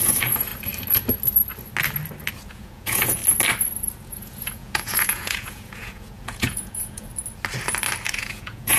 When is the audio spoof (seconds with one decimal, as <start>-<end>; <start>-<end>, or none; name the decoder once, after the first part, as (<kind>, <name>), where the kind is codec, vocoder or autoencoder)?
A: 0.0-0.5 (vocoder, Vocos); 2.5-3.2; 3.9-7.1; 8.1-8.8